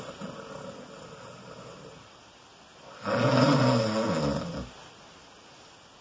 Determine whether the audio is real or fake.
real